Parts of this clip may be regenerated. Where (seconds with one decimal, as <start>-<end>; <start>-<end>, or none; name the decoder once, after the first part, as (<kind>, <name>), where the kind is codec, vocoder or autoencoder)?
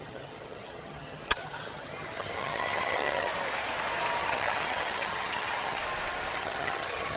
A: 0.0-3.3 (vocoder, HiFi-GAN); 4.2-5.8; 6.3-7.2